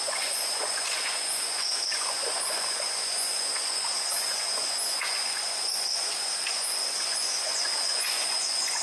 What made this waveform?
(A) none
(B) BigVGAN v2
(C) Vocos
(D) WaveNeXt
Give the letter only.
C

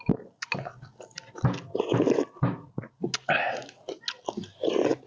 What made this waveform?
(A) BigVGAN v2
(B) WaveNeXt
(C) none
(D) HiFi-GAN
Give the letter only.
C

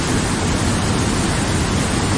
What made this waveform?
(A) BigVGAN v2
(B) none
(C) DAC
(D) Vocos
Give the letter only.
B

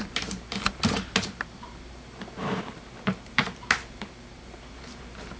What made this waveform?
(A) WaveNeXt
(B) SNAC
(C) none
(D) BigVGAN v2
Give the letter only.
D